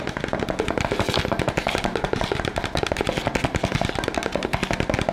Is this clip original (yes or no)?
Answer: yes